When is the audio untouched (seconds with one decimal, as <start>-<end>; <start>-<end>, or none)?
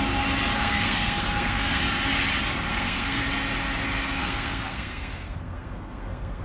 0.0-0.6; 1.8-2.7; 3.2-4.2